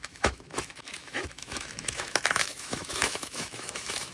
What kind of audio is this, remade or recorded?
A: remade